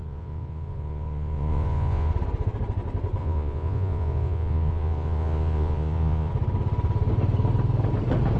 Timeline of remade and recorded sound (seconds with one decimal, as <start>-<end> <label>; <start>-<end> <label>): 0.0-2.1 remade; 2.1-3.2 recorded; 3.2-6.3 remade; 6.3-8.4 recorded